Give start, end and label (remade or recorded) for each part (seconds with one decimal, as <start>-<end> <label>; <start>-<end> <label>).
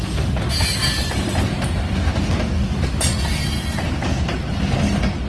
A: 0.0-5.3 recorded